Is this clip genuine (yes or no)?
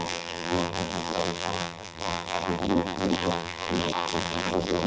no